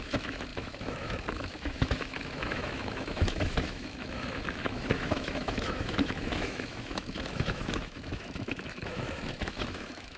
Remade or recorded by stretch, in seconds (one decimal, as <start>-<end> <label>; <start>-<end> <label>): 0.0-10.2 remade